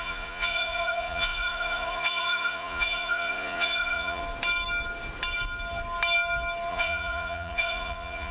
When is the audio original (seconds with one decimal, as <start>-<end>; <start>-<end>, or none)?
4.2-6.7